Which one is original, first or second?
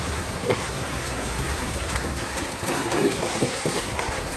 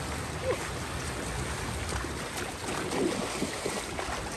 second